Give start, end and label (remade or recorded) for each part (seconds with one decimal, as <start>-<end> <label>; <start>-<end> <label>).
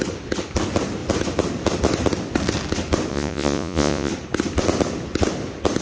0.0-3.1 recorded; 3.1-4.1 remade; 4.1-5.8 recorded